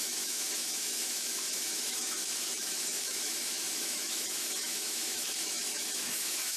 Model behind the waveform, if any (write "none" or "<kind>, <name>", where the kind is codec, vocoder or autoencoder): autoencoder, DAC-VAE